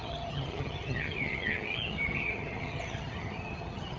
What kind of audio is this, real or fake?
fake